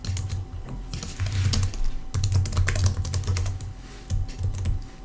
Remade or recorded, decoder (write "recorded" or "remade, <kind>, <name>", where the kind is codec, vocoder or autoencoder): recorded